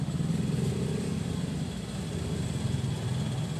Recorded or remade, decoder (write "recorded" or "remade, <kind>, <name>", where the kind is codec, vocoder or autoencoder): recorded